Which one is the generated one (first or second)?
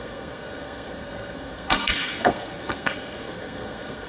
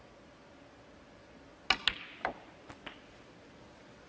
first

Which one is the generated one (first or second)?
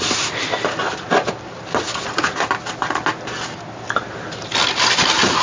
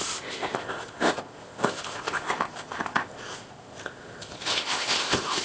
second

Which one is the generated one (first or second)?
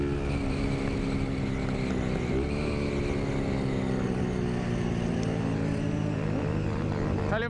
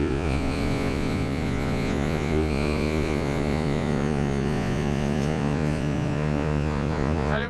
second